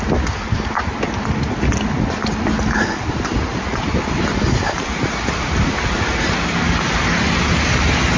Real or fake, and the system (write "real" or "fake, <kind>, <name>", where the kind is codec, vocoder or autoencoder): real